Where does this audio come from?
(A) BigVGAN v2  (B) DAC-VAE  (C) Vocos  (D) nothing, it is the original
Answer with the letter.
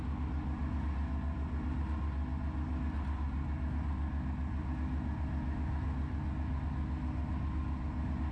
D